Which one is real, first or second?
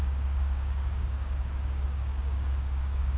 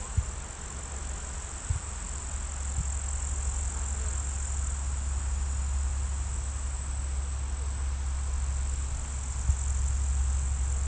second